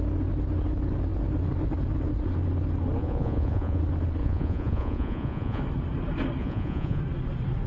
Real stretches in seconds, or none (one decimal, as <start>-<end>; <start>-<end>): 0.0-3.0; 3.8-4.2; 5.6-6.4; 7.0-7.7